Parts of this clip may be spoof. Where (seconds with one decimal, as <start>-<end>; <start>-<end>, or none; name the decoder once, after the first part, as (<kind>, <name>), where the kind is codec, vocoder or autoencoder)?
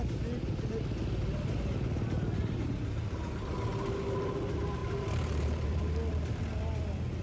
2.4-3.5 (vocoder, BigVGAN v2); 4.8-5.8